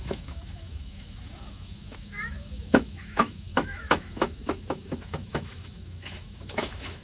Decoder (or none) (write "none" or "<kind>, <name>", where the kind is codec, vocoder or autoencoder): autoencoder, DAC-VAE